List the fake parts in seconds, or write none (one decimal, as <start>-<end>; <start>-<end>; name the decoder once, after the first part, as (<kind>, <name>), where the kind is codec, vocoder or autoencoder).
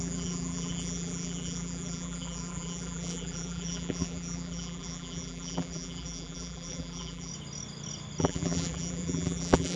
0.0-7.3 (vocoder, BigVGAN v2); 8.2-9.8